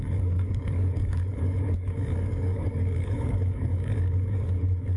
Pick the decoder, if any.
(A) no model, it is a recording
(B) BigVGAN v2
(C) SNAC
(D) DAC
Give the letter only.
D